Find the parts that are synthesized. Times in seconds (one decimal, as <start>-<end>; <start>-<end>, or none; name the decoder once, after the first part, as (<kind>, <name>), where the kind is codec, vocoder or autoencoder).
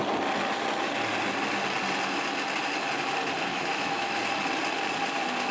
3.5-4.2 (autoencoder, DAC-VAE)